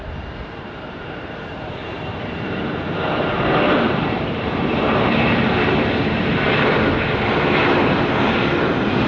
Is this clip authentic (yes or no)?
no